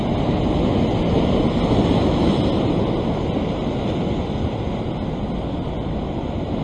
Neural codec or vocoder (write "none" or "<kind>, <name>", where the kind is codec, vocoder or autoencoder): none